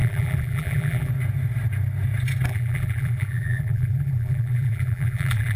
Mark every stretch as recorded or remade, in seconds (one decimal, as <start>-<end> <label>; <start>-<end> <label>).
0.0-1.1 remade; 1.1-2.5 recorded; 2.5-5.6 remade